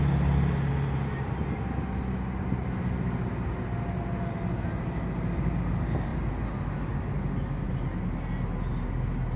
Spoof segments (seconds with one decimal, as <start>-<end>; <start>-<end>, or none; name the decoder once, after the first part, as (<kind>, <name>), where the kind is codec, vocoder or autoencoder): none